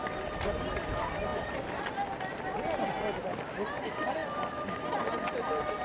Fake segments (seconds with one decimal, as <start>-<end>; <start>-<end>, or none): none